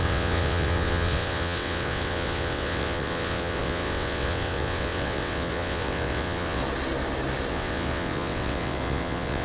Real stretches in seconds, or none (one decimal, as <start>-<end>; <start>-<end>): 6.6-7.5